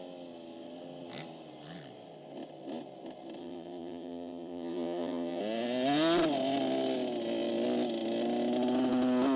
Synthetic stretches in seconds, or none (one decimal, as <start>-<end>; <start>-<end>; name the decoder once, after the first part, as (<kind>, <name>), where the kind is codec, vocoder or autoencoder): 3.4-5.4 (vocoder, HiFi-GAN)